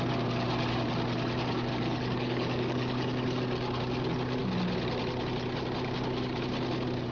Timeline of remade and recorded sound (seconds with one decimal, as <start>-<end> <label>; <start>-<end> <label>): 0.0-1.7 recorded; 1.7-3.4 remade; 3.4-7.1 recorded